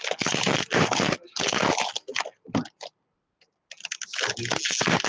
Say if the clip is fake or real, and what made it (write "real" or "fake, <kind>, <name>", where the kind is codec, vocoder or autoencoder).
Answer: real